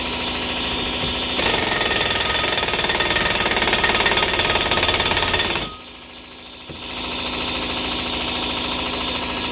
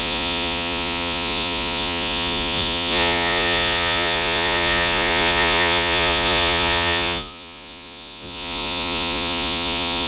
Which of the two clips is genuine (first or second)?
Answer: first